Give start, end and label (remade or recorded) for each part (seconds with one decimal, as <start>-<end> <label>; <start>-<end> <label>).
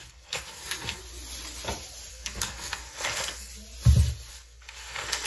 0.0-1.0 remade; 1.0-2.1 recorded; 2.1-3.5 remade; 3.5-4.3 recorded; 4.3-5.3 remade